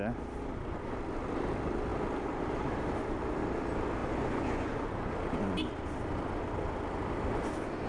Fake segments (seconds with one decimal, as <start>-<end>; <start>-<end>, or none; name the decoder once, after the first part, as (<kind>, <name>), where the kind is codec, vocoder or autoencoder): 4.0-5.1 (vocoder, Vocos)